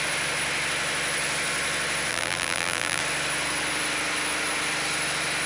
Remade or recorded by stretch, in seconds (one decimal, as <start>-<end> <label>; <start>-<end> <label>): 0.0-2.1 recorded; 2.1-3.0 remade; 3.0-5.5 recorded